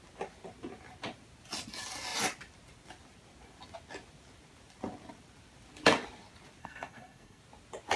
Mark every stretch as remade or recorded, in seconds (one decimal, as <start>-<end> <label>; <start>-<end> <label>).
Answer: 0.0-6.6 recorded; 6.6-7.4 remade; 7.4-8.0 recorded